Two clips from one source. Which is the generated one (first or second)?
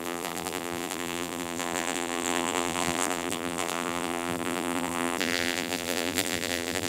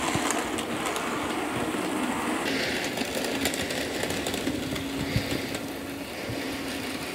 first